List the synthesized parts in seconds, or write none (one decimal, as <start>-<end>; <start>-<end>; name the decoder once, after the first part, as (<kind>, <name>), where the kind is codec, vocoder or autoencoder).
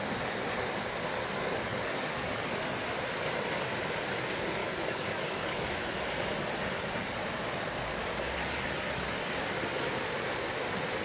1.7-2.5 (codec, DAC); 4.6-5.7; 8.4-9.4